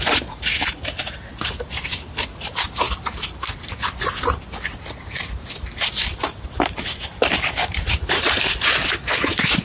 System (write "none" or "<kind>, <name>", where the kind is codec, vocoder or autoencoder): none